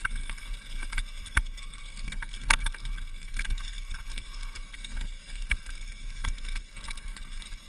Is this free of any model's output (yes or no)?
no